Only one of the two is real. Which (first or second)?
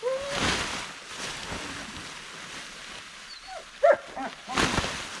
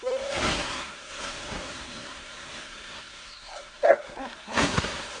first